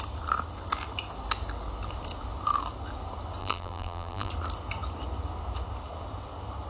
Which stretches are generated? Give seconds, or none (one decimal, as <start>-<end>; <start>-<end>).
3.4-4.3